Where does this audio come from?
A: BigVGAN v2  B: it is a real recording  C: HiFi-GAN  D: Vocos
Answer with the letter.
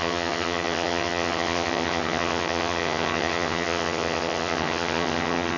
C